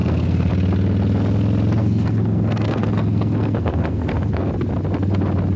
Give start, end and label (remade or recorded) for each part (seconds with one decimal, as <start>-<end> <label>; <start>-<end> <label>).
0.0-0.5 remade; 0.5-1.8 recorded; 1.8-4.5 remade; 4.5-5.6 recorded